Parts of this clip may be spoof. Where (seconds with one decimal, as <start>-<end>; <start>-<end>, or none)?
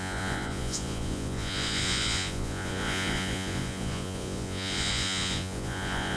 0.0-6.2